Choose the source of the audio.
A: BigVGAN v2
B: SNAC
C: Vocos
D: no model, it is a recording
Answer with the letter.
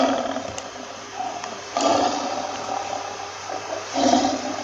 A